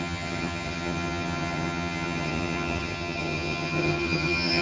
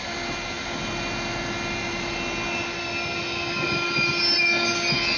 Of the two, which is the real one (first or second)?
second